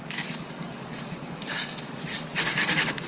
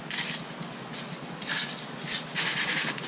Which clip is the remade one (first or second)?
first